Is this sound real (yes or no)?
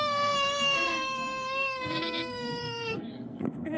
no